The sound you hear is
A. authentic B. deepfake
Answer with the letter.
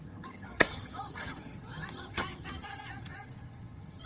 B